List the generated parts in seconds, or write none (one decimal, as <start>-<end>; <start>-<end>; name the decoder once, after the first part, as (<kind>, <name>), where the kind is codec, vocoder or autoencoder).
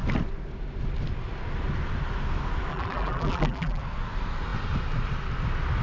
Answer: 2.7-3.8 (vocoder, BigVGAN v2)